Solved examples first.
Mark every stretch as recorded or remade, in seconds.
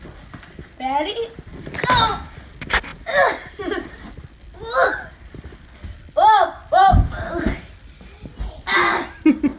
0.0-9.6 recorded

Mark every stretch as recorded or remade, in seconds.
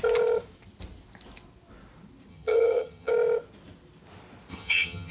0.0-2.3 recorded; 2.3-3.1 remade; 3.1-4.5 recorded; 4.5-5.1 remade